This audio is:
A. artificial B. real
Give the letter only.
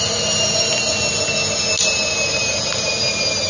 B